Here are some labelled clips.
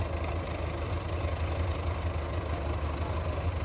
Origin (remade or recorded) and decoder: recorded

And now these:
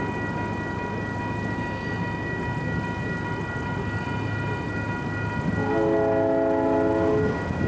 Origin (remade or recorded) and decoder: recorded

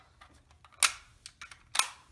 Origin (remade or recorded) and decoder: recorded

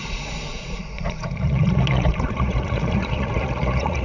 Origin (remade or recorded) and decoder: remade, vocoder, Vocos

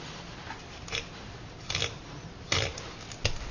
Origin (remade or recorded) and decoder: recorded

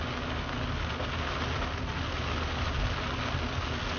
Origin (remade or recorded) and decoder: recorded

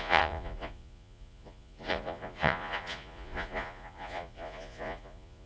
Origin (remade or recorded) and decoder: remade, vocoder, Vocos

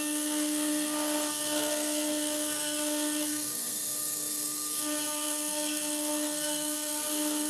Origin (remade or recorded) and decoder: remade, codec, SNAC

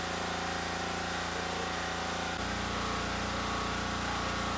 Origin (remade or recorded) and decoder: recorded